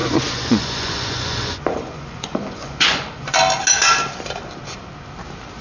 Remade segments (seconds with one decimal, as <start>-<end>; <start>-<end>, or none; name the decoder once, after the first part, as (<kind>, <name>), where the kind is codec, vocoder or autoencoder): 0.0-3.4 (vocoder, Vocos)